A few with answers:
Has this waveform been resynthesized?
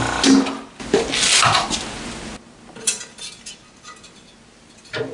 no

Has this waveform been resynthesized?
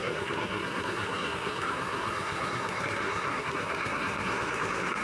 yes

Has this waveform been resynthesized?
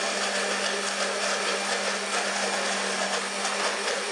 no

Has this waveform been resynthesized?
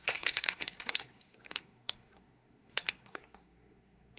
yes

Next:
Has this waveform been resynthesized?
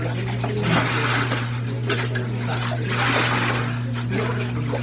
no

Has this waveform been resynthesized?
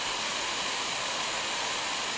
no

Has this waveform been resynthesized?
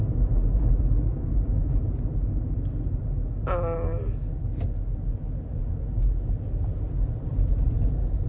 no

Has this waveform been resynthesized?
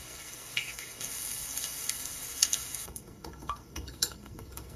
yes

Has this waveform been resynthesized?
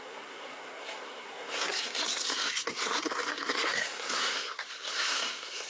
yes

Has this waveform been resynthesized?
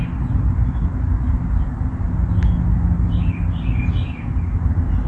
no